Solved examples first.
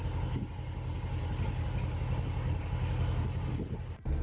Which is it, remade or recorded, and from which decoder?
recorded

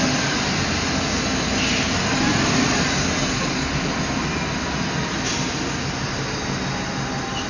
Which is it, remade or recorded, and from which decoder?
recorded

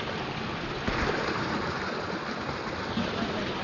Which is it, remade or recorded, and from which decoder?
recorded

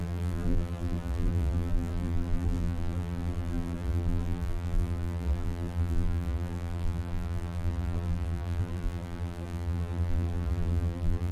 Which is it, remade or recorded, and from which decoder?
remade, vocoder, BigVGAN v2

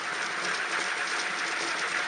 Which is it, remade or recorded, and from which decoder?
recorded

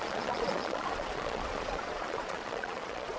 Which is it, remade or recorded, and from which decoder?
remade, vocoder, Vocos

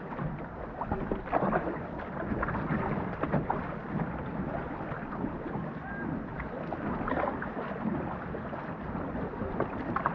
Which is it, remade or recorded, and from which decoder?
recorded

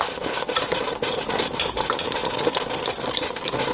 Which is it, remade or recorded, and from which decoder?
recorded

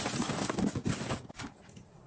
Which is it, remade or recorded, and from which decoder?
recorded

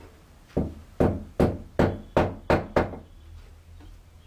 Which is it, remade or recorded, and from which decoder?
recorded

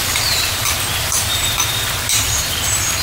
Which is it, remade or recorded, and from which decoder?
remade, vocoder, BigVGAN v2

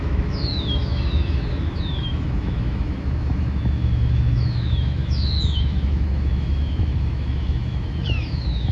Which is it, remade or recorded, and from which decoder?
remade, autoencoder, DAC-VAE